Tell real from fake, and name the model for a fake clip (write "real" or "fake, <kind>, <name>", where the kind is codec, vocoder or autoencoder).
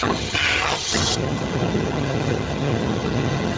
fake, vocoder, HiFi-GAN